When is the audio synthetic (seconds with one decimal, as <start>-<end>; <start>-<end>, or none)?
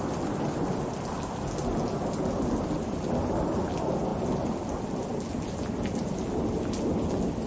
none